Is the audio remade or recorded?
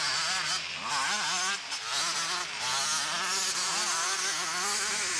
recorded